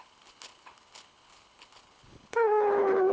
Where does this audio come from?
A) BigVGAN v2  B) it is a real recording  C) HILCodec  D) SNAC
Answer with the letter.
C